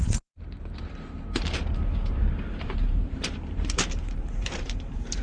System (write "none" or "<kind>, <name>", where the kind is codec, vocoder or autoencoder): vocoder, BigVGAN v2